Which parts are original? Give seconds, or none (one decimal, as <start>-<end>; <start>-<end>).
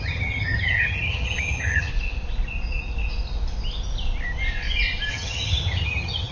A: 1.9-5.1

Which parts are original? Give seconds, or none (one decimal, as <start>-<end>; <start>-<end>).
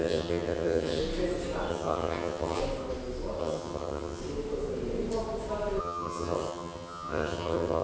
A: 1.0-1.7; 2.6-3.4; 4.2-5.8